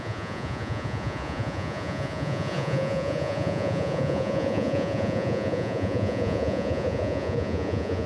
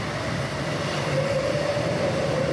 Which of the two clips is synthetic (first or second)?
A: first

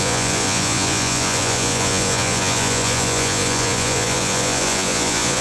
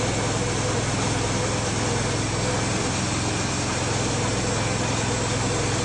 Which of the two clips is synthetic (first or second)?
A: first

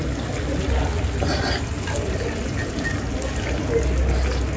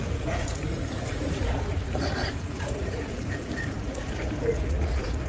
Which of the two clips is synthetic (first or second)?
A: second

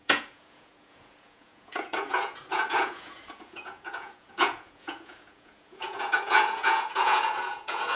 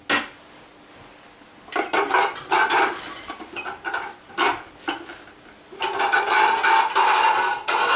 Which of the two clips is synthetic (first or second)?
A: first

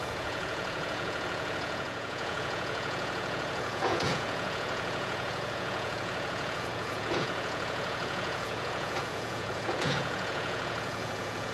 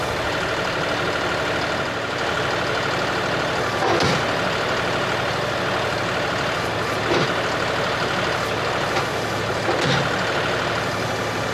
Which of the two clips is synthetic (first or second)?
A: first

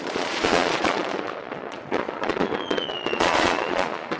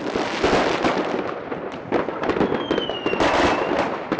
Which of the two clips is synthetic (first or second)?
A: first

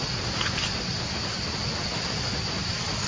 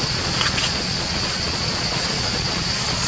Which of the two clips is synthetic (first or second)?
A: second